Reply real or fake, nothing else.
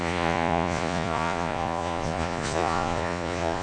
fake